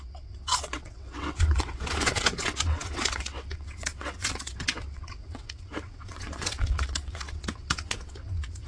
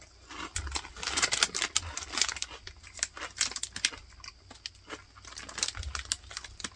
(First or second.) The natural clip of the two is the second